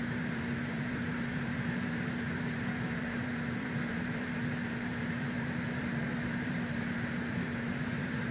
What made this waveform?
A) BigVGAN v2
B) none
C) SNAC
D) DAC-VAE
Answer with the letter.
A